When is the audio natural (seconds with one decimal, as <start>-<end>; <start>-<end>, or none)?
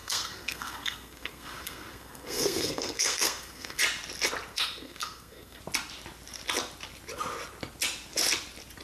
3.8-4.5; 5.6-8.8